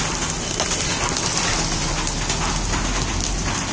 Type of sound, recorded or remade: recorded